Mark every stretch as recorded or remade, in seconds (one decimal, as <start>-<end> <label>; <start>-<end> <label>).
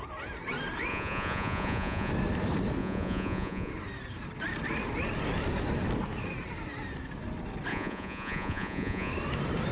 0.0-0.9 recorded; 0.9-2.1 remade; 2.1-2.8 recorded; 2.8-3.7 remade; 3.7-7.7 recorded; 7.7-9.1 remade; 9.1-9.7 recorded